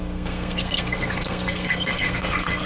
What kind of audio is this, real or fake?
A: fake